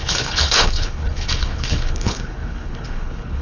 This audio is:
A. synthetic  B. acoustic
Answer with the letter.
A